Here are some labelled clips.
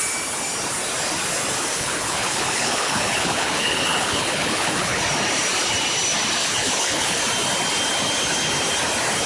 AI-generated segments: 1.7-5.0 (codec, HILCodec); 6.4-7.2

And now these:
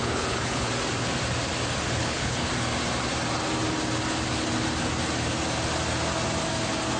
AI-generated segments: 0.0-0.7 (codec, HILCodec); 2.0-2.5